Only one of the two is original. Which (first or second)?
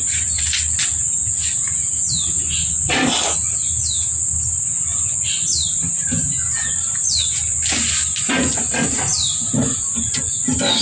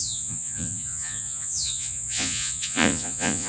first